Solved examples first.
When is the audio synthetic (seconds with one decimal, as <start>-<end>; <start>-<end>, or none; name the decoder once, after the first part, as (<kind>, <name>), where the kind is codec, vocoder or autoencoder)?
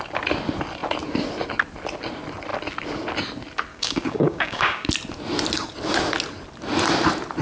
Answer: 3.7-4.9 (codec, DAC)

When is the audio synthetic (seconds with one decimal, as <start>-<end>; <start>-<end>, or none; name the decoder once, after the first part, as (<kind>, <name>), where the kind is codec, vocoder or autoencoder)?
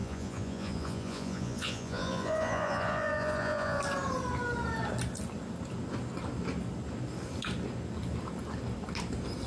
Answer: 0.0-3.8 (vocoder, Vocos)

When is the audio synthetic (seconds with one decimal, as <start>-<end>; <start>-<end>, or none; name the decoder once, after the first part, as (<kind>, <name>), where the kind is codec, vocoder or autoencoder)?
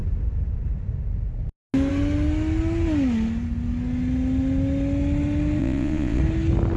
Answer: 5.6-6.2 (vocoder, Vocos)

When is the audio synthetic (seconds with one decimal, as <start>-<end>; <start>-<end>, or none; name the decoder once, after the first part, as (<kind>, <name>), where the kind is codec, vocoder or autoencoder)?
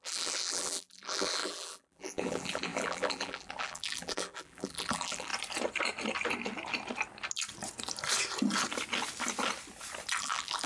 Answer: 0.0-5.3 (vocoder, BigVGAN v2); 10.2-10.7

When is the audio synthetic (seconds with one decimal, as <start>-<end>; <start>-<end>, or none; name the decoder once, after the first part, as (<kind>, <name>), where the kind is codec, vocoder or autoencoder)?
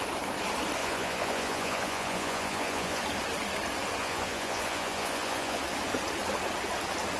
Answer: 0.8-3.0 (vocoder, Vocos); 4.0-5.6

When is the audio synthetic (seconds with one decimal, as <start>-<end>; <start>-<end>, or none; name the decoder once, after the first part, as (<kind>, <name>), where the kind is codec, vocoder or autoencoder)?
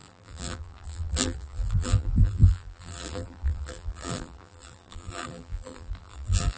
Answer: 0.0-6.6 (vocoder, BigVGAN v2)